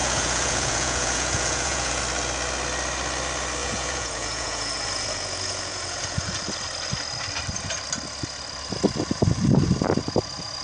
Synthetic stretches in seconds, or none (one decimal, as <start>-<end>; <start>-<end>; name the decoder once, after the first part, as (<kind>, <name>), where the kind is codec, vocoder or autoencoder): 0.0-2.0 (vocoder, Vocos); 3.6-6.4